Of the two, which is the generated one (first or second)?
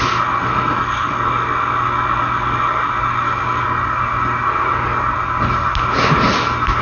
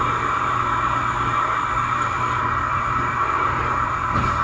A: second